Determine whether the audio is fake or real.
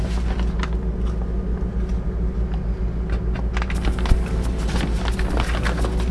real